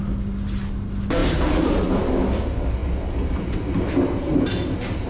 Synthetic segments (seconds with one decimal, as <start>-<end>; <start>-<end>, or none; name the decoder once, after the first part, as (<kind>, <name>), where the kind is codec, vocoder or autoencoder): none